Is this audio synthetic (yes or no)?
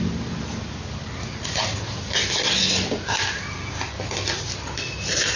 no